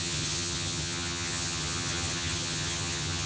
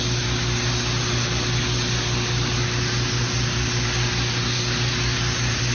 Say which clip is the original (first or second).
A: second